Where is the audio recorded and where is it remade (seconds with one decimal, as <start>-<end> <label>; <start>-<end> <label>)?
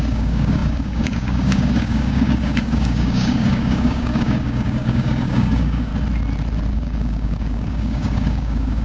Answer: 0.0-5.9 remade; 5.9-6.7 recorded; 6.7-8.8 remade